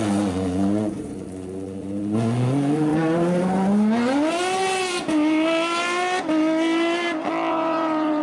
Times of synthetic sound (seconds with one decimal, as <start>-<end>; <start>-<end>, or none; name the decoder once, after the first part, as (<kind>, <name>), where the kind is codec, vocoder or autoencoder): 0.0-2.9 (vocoder, Vocos); 7.5-8.2